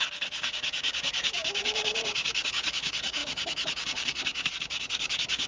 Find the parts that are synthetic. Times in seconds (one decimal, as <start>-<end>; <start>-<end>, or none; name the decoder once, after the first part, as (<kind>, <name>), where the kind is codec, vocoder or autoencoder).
0.0-5.5 (codec, DAC)